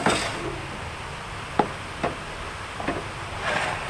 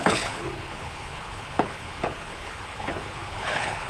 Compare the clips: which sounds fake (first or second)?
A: second